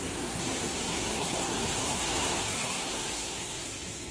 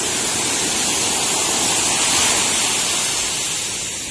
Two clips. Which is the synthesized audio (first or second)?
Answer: first